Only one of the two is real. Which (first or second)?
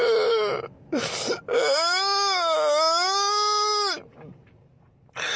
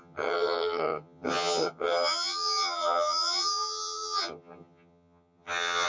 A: first